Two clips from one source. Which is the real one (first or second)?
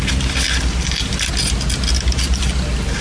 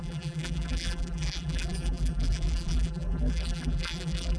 first